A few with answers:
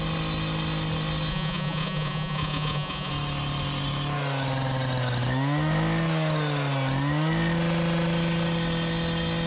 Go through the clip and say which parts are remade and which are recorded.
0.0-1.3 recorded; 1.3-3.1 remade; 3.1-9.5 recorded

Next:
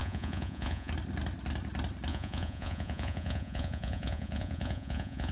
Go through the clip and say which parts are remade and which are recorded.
0.0-0.9 remade; 0.9-2.1 recorded; 2.1-5.3 remade

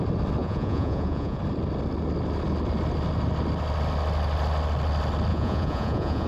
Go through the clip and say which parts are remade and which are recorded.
0.0-0.4 recorded; 0.4-1.4 remade; 1.4-5.3 recorded; 5.3-6.3 remade

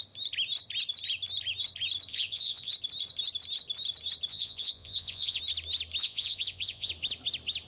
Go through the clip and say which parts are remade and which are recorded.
0.0-2.1 recorded; 2.1-2.7 remade; 2.7-4.3 recorded; 4.3-5.4 remade; 5.4-6.0 recorded; 6.0-6.9 remade; 6.9-7.7 recorded

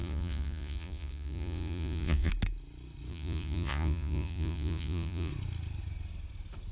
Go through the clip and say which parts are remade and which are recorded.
0.0-2.3 remade; 2.3-3.1 recorded; 3.1-5.3 remade; 5.3-6.7 recorded

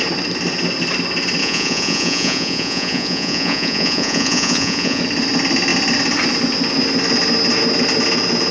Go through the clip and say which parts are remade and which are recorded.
0.0-1.4 recorded; 1.4-5.0 remade; 5.0-8.5 recorded

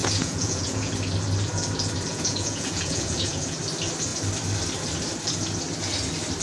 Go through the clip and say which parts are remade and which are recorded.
0.0-0.9 remade; 0.9-2.1 recorded; 2.1-3.6 remade; 3.6-6.4 recorded